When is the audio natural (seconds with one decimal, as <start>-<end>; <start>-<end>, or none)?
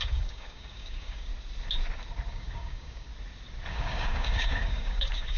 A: 1.3-2.3; 3.1-3.7